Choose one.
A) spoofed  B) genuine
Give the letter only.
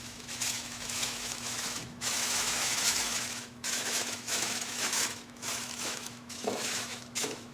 A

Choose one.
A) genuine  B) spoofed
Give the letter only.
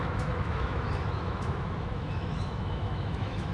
B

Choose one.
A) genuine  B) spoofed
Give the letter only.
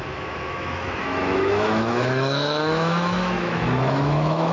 B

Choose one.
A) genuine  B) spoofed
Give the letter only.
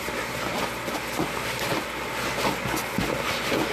A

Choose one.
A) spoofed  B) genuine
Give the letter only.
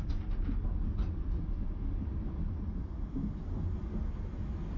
B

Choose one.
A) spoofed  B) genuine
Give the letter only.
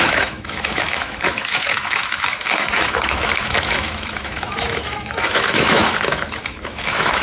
A